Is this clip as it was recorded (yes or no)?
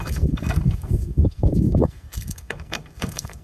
no